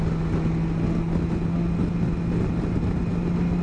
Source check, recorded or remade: recorded